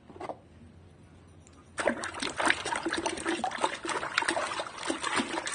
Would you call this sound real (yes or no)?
yes